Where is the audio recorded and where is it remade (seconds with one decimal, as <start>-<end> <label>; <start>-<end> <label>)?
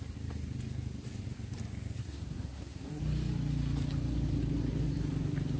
0.0-2.0 recorded; 2.0-2.9 remade; 2.9-5.6 recorded